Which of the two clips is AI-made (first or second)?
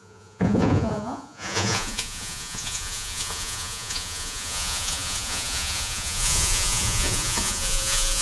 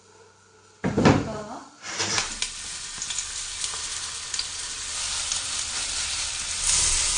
first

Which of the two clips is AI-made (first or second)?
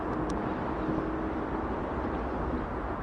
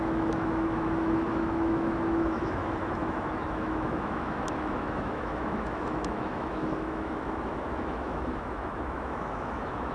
second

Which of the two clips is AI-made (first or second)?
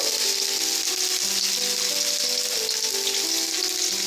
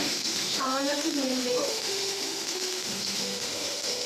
second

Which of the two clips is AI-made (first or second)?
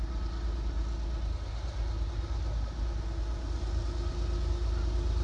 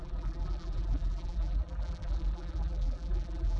second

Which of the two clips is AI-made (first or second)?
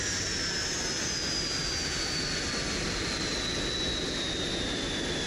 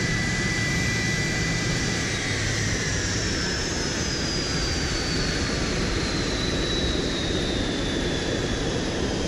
second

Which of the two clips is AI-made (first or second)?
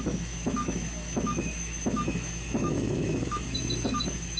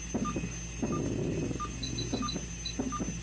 first